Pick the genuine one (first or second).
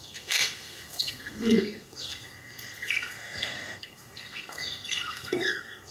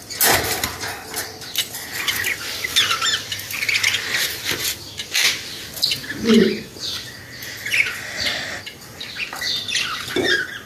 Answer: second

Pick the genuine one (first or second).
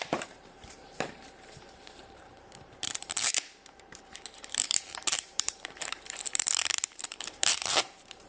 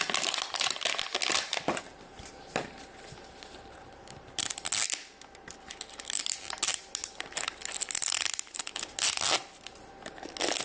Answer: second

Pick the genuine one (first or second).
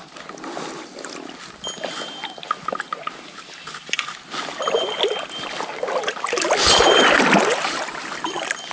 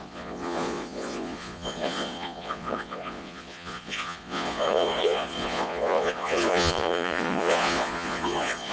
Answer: first